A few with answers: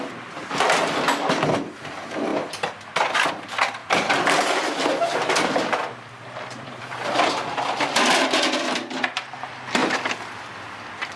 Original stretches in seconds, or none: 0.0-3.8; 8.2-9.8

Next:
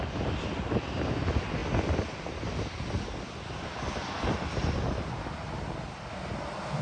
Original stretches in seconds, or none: 0.0-6.8